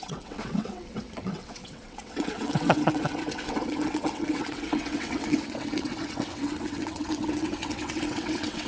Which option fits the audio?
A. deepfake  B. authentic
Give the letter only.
A